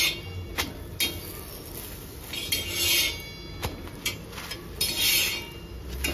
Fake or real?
real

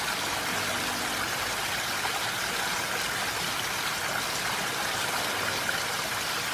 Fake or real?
real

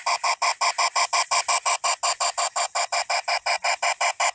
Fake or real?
real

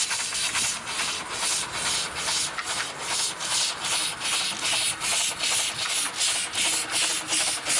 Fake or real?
real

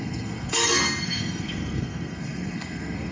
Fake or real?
fake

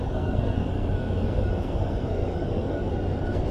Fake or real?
fake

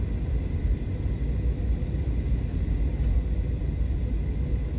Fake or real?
real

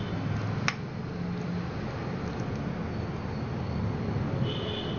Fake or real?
real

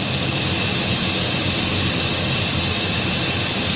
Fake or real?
real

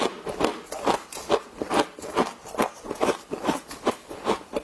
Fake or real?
real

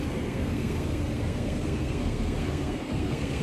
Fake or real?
fake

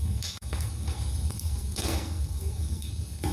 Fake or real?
fake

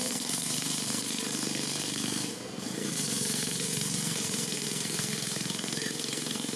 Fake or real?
fake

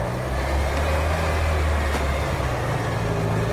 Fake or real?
real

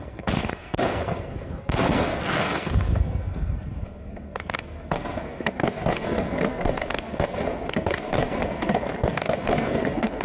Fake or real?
fake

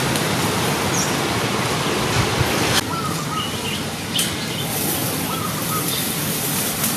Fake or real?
real